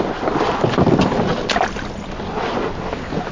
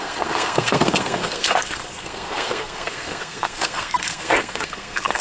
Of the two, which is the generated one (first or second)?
second